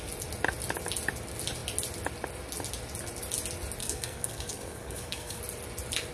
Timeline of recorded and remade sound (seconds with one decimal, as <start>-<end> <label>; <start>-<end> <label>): 0.0-3.8 recorded; 3.8-5.4 remade; 5.4-6.1 recorded